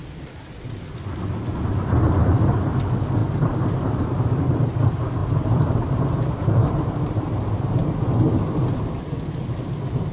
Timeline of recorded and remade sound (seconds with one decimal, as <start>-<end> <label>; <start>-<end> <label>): 0.0-3.2 recorded; 3.2-4.0 remade; 4.0-5.2 recorded; 5.2-8.0 remade; 8.0-10.1 recorded